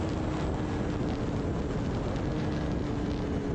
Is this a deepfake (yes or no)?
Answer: no